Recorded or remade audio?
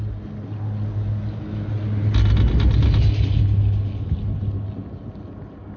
recorded